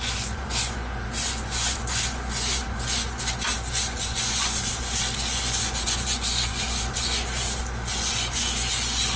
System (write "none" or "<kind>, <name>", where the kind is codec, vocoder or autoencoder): vocoder, Vocos